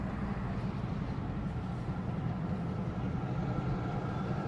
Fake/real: real